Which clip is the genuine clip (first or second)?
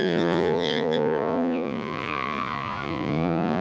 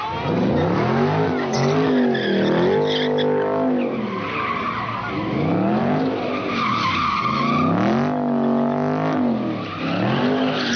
second